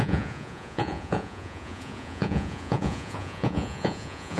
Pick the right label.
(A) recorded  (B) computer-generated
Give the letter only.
B